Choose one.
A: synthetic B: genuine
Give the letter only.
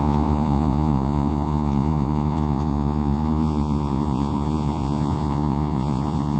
A